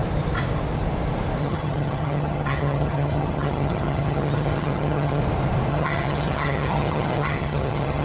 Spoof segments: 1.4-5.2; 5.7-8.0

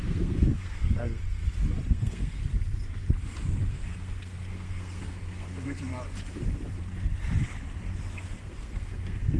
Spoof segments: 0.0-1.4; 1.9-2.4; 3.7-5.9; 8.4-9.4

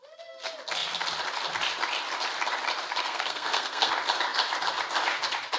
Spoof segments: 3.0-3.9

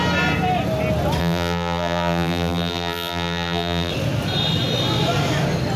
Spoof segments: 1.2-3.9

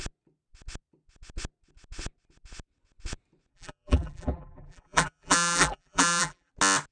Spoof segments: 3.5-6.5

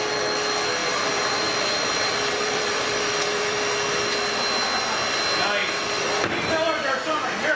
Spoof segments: 0.8-3.6; 5.6-6.3

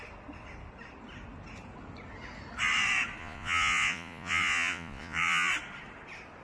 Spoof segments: 3.2-5.5

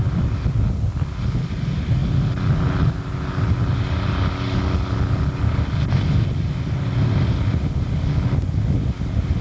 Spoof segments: 0.0-2.0; 5.7-9.4